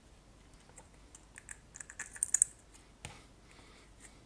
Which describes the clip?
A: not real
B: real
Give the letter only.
B